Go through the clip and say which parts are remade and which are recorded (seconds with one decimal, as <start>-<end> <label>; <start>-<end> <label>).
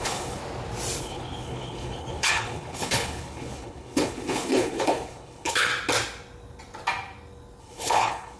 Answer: 0.0-0.4 remade; 0.4-1.0 recorded; 1.0-5.7 remade; 5.7-7.6 recorded; 7.6-8.4 remade